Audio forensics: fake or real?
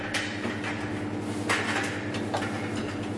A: real